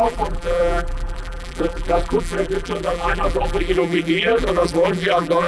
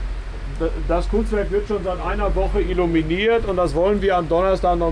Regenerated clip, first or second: first